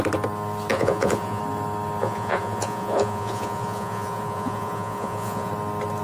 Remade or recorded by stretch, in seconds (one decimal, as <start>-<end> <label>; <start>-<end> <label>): 0.0-0.7 recorded; 0.7-1.4 remade; 1.4-2.0 recorded; 2.0-5.5 remade; 5.5-6.0 recorded